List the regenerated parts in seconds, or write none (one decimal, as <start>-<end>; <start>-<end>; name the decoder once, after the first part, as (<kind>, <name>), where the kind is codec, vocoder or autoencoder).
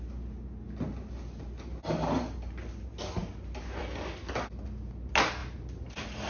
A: none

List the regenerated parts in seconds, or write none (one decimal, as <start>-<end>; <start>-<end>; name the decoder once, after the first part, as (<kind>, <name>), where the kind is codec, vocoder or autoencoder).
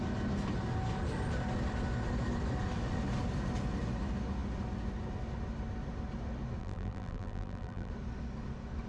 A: 6.6-7.9 (vocoder, BigVGAN v2)